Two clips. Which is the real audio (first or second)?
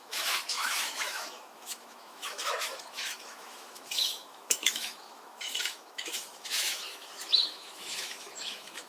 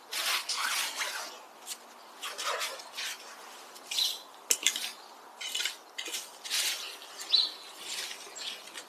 second